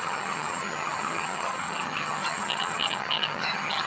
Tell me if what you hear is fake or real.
fake